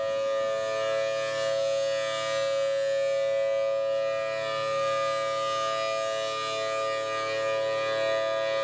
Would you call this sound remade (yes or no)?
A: no